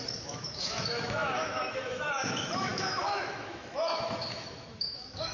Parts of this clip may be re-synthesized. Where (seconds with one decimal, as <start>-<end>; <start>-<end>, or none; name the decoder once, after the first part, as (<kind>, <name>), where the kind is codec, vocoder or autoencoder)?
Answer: 0.0-5.3 (autoencoder, DAC-VAE)